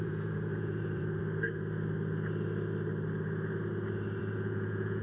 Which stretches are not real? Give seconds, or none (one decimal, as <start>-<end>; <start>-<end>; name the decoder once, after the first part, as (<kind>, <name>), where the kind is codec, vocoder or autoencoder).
0.0-1.2 (vocoder, Vocos); 4.2-5.0